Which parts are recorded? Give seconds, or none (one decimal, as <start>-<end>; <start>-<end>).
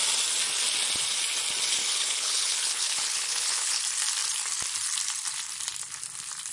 0.0-1.8; 3.8-6.5